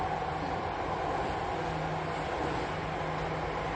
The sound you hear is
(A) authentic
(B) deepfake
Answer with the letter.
A